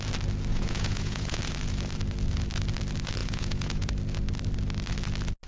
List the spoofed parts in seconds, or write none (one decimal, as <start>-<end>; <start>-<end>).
0.5-1.4; 3.2-3.9